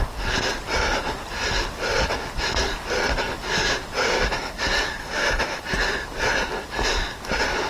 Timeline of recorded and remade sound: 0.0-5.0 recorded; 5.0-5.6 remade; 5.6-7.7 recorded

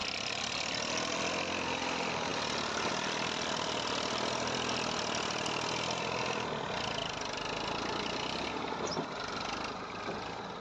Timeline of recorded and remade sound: 0.0-10.6 recorded

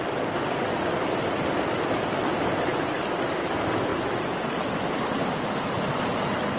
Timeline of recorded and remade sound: 0.0-6.6 recorded

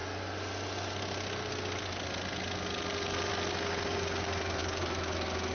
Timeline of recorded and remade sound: 0.0-4.6 recorded; 4.6-5.5 remade

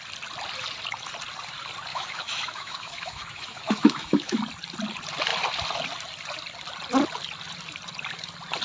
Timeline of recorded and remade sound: 0.0-1.9 recorded; 1.9-4.4 remade; 4.4-8.6 recorded

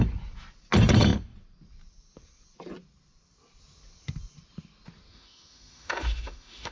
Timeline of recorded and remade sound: 0.0-5.1 recorded; 5.1-6.7 remade